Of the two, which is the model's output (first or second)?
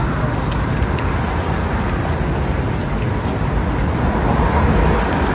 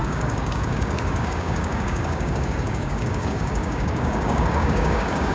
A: second